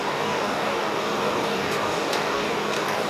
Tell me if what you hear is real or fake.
fake